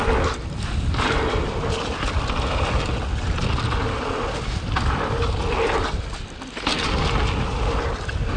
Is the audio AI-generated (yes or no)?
no